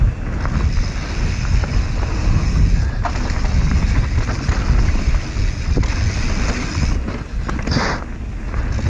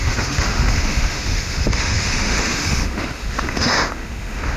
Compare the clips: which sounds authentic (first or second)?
first